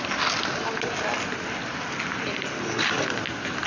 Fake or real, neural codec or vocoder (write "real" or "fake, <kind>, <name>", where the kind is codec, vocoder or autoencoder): real